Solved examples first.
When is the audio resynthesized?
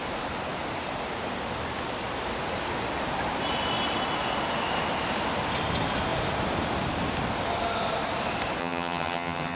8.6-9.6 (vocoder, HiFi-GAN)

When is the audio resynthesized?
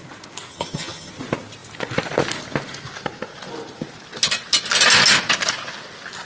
0.5-1.1 (vocoder, HiFi-GAN)